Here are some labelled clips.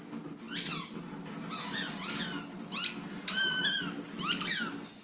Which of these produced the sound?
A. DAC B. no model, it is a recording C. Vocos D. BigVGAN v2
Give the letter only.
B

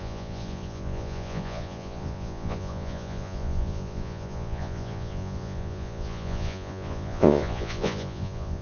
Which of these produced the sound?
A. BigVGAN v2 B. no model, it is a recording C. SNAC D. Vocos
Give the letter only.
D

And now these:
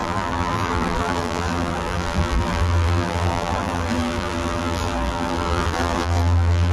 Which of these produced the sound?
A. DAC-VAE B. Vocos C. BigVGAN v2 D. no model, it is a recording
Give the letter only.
C